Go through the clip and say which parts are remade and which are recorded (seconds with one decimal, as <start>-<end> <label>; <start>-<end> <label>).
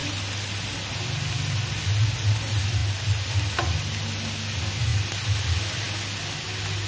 0.0-6.9 recorded